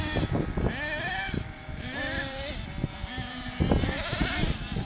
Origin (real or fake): real